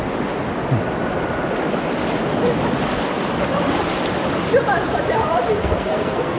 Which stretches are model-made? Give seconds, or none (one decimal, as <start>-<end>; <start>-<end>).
5.6-6.4